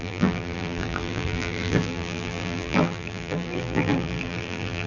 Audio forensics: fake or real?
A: fake